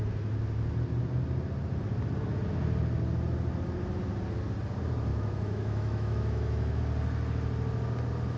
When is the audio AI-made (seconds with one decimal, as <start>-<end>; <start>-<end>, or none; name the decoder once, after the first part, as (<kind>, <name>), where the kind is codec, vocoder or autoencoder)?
5.1-6.8 (autoencoder, DAC-VAE)